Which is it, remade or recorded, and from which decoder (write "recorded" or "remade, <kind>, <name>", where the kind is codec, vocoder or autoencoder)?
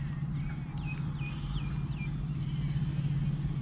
recorded